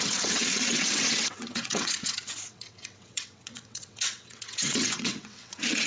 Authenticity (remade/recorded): remade